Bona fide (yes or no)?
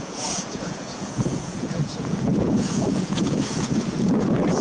no